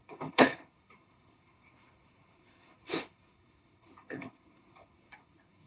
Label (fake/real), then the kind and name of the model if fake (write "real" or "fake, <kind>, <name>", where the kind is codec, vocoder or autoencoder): fake, codec, HILCodec